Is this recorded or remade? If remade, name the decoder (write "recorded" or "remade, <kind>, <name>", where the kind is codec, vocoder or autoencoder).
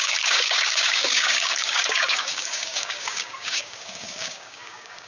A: remade, codec, DAC